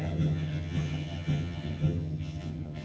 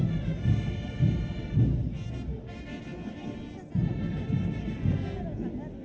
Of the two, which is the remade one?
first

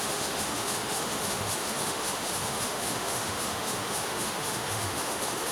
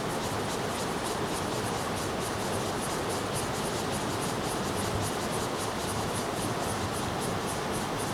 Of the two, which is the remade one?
first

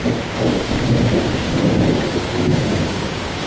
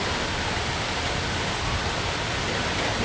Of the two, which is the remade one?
first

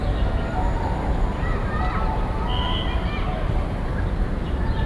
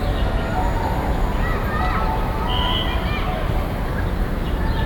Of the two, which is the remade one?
first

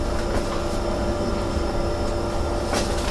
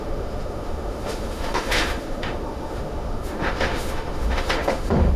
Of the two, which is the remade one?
second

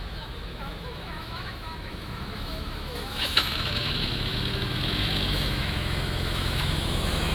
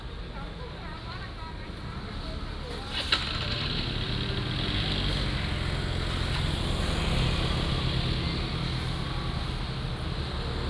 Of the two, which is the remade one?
first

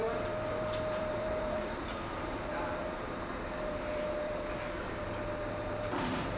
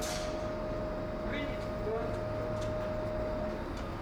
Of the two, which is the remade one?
first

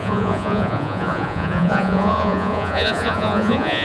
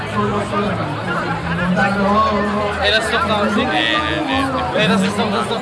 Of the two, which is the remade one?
first